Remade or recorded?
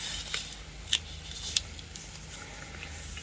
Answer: recorded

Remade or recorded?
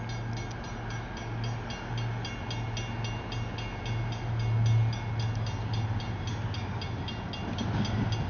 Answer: recorded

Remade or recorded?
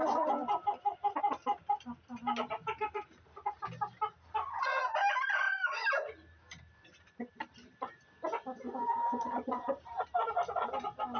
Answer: recorded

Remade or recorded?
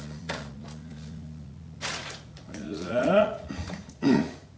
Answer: remade